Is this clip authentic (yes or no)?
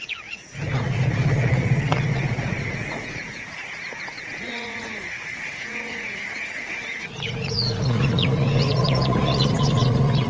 no